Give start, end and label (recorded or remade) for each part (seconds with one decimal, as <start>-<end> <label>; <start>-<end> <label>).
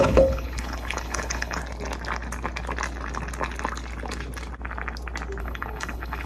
0.0-1.6 remade; 1.6-5.4 recorded; 5.4-6.3 remade